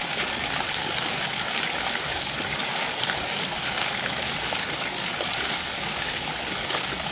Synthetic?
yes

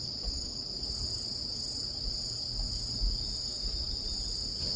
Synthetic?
no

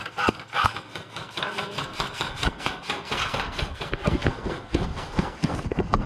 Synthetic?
yes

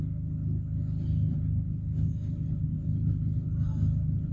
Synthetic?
no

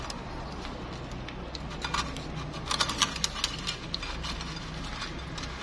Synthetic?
no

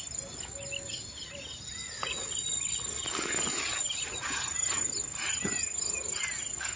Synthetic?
no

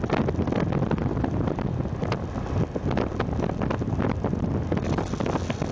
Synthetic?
no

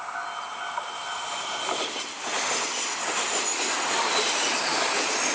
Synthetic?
no